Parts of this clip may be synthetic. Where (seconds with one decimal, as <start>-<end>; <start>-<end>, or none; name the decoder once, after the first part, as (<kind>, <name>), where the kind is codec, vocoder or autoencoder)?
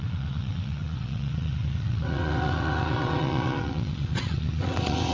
0.0-5.1 (vocoder, WaveNeXt)